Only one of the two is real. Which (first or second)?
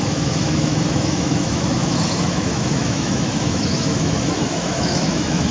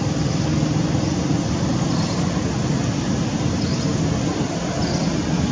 second